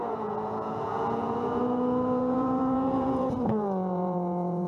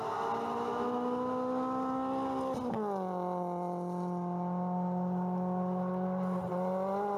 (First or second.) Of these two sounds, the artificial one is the first